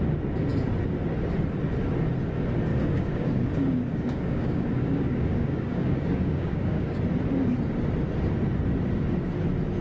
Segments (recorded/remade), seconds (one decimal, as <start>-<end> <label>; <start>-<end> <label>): 0.0-2.7 recorded; 2.7-7.0 remade; 7.0-9.8 recorded